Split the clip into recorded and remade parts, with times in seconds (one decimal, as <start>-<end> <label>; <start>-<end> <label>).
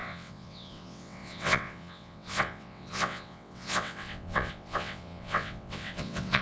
0.0-6.4 remade